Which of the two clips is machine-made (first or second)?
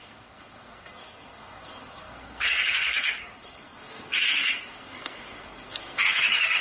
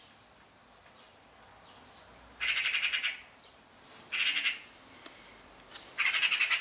first